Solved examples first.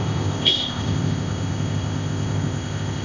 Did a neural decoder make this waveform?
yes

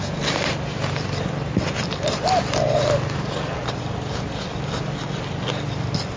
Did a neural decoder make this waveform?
no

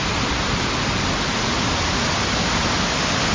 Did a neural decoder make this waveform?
no